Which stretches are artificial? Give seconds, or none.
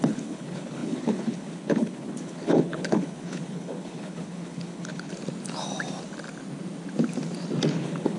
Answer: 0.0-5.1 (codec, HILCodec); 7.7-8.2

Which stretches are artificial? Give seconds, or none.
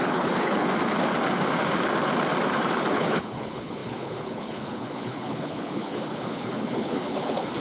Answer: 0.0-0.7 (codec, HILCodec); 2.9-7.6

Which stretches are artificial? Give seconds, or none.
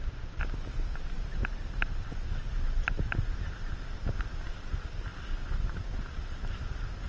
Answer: none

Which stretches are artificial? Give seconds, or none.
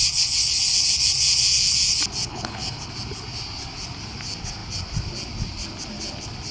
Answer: 2.2-2.9 (codec, HILCodec)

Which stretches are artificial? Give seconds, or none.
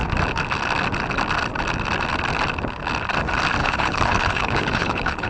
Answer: 3.6-5.3 (codec, HILCodec)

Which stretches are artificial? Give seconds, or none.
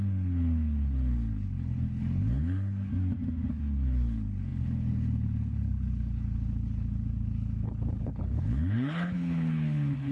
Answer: 0.0-2.9 (codec, HILCodec); 3.5-10.1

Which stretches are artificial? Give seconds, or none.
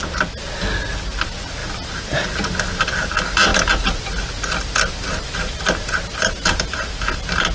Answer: none